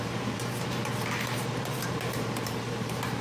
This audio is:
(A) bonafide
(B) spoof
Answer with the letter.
B